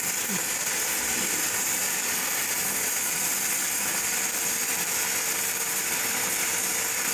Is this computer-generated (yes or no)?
no